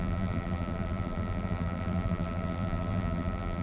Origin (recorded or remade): remade